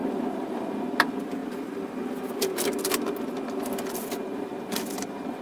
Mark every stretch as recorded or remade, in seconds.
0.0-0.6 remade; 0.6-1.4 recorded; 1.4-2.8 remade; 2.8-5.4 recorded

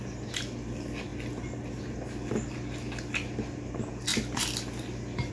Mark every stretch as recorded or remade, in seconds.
0.0-5.3 recorded